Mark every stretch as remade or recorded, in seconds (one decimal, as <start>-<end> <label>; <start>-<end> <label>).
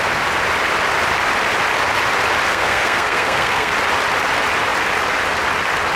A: 0.0-2.5 recorded; 2.5-3.7 remade; 3.7-6.0 recorded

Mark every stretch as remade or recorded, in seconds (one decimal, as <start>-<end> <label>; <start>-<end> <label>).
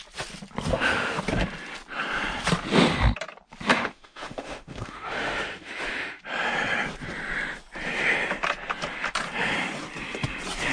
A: 0.0-0.7 recorded; 0.7-1.2 remade; 1.2-3.7 recorded; 3.7-6.2 remade; 6.2-10.7 recorded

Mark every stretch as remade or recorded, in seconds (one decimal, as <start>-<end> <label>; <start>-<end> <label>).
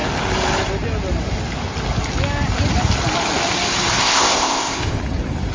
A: 0.0-4.0 recorded; 4.0-5.0 remade; 5.0-5.5 recorded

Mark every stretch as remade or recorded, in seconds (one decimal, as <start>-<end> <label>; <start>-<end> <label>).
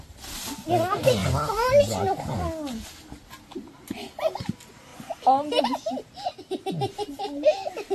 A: 0.0-7.9 recorded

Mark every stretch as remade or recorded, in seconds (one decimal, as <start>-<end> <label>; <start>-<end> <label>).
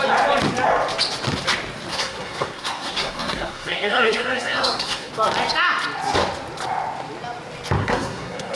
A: 0.0-1.9 recorded; 1.9-5.1 remade; 5.1-7.8 recorded; 7.8-8.6 remade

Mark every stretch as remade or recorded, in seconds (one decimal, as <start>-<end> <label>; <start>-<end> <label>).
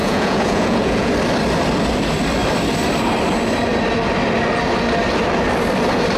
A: 0.0-1.1 remade; 1.1-6.2 recorded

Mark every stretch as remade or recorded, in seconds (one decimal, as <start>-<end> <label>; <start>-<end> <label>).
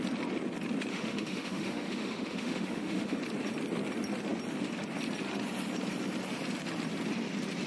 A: 0.0-0.9 recorded; 0.9-3.2 remade; 3.2-7.7 recorded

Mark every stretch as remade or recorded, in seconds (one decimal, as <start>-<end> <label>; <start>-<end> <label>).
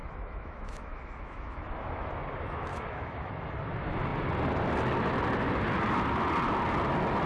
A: 0.0-2.1 remade; 2.1-2.7 recorded; 2.7-3.3 remade; 3.3-7.3 recorded